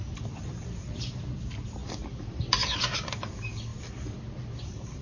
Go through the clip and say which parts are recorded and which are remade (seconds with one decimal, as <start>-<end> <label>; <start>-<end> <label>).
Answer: 0.0-3.7 remade; 3.7-4.6 recorded; 4.6-5.0 remade